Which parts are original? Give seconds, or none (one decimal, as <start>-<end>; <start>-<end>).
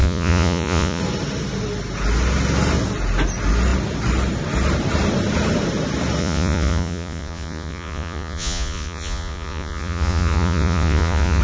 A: 1.0-6.2